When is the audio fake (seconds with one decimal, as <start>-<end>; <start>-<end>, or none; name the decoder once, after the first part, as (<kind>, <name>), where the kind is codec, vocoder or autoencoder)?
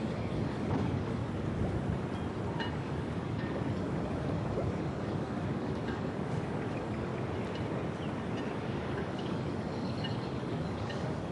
0.0-1.2 (codec, DAC); 2.7-7.1; 8.5-11.3